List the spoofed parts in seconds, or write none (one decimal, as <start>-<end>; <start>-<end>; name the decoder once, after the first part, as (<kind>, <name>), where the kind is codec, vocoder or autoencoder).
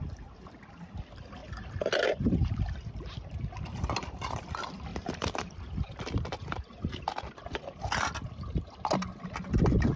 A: 1.4-2.5 (vocoder, BigVGAN v2); 4.9-6.0